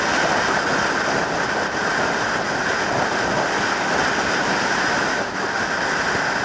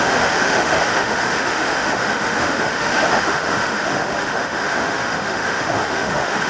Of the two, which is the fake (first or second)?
second